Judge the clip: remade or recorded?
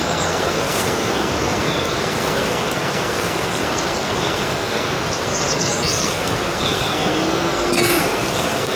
remade